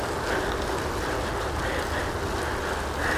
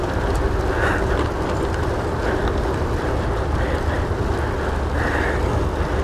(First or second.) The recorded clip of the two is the first